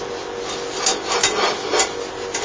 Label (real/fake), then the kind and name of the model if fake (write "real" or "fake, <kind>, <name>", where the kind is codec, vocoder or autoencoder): real